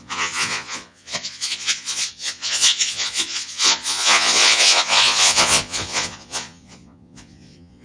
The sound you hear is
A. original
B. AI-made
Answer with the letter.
B